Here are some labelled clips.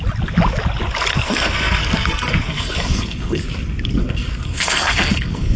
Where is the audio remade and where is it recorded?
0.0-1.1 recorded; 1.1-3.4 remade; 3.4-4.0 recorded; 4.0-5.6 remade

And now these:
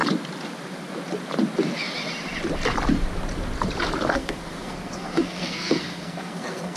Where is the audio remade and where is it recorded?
0.0-4.1 recorded; 4.1-6.8 remade

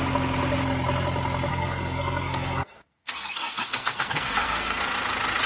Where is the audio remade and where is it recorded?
0.0-1.5 recorded; 1.5-4.8 remade; 4.8-5.5 recorded

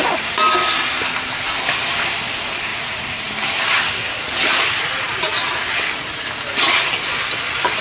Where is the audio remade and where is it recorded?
0.0-2.7 recorded; 2.7-3.3 remade; 3.3-7.8 recorded

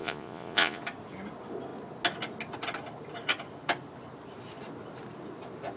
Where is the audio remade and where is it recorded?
0.0-0.8 remade; 0.8-5.8 recorded